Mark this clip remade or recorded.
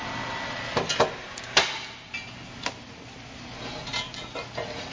recorded